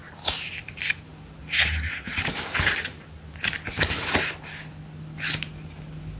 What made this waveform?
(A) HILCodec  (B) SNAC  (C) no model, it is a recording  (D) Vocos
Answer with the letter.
C